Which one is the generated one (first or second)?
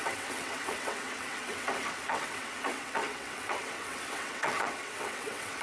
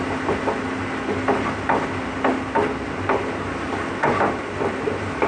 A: first